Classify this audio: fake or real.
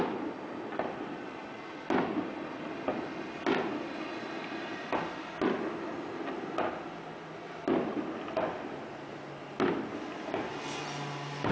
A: real